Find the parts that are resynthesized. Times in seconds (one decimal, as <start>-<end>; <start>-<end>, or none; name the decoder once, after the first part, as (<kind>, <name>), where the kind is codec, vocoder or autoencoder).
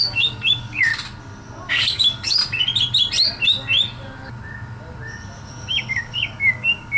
0.0-0.9 (codec, DAC); 1.7-2.4; 5.5-7.0